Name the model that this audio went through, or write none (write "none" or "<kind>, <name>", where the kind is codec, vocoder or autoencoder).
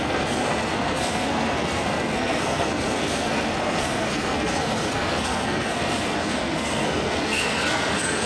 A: codec, SNAC